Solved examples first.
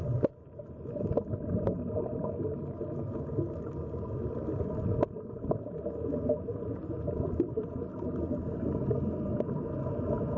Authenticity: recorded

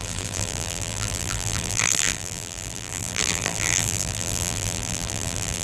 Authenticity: remade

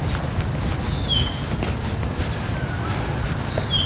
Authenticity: recorded